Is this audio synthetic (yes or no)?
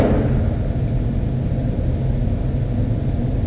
no